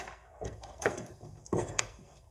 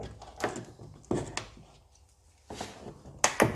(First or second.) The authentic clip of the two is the second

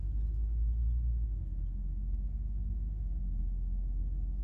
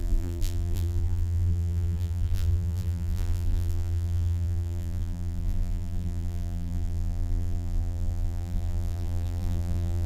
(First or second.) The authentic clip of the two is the first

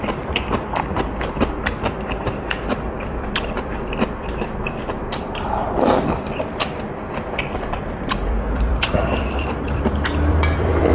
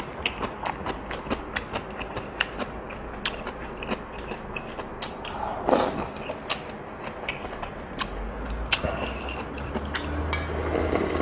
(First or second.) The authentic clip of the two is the second